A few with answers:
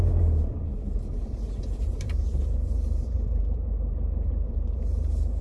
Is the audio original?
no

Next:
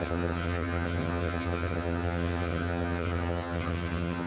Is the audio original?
no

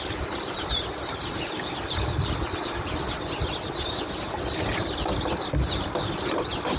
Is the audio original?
no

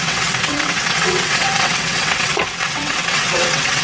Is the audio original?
no